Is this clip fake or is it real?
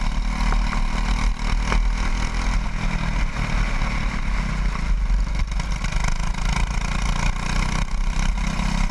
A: real